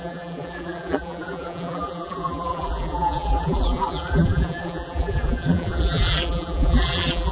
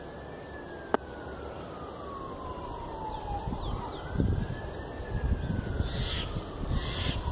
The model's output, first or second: first